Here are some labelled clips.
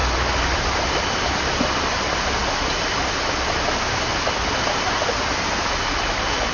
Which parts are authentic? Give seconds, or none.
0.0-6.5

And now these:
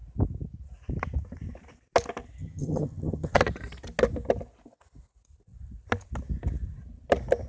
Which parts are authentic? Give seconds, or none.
0.0-2.4; 3.4-7.5

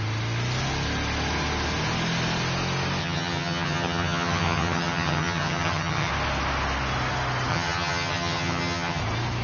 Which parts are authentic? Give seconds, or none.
0.0-3.0; 6.1-7.5; 9.0-9.4

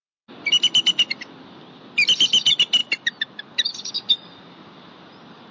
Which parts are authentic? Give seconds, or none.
0.0-5.5

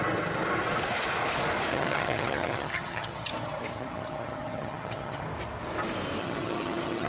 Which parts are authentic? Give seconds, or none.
0.0-1.7; 5.2-6.2

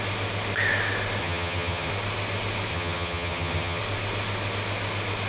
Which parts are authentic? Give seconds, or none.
0.0-1.2; 1.9-2.7; 3.8-5.3